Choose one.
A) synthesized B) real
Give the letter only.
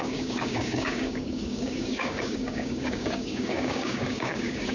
A